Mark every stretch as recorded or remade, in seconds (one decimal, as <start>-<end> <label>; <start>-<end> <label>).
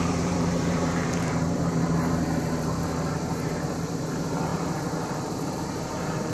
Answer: 0.0-6.3 remade